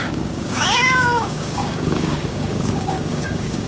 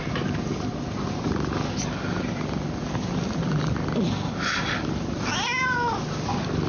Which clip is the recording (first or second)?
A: second